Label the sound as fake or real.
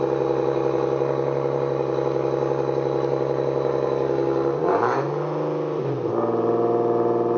real